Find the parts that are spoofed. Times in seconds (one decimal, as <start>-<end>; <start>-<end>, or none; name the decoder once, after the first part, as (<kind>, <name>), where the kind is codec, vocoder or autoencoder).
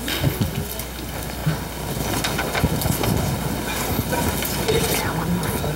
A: none